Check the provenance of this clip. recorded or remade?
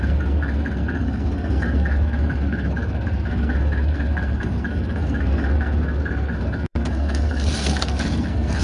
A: remade